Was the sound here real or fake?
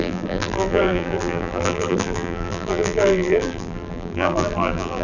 fake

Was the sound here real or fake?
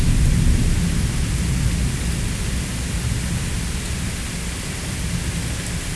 real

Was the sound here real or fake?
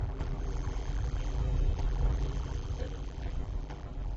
fake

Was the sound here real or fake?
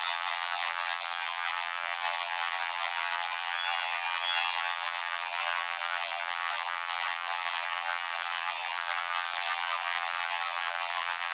fake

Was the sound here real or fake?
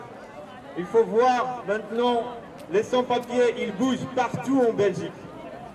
real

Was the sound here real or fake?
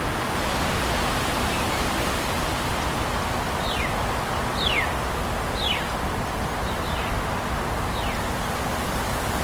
real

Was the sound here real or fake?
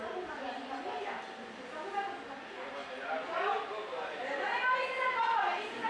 real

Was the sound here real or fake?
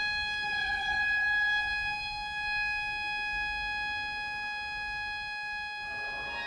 real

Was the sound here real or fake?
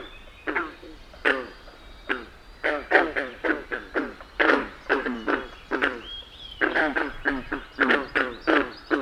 fake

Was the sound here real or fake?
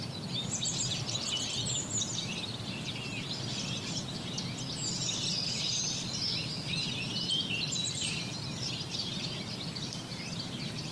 real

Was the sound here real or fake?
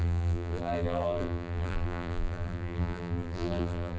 fake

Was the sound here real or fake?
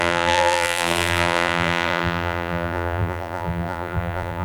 fake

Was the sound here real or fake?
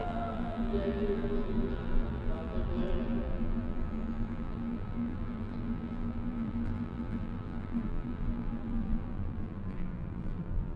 fake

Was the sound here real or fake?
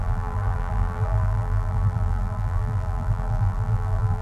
fake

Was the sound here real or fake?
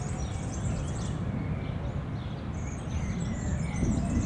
real